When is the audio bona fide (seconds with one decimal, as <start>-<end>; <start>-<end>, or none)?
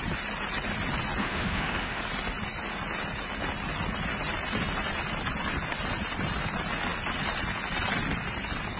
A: 0.0-1.2; 2.0-8.8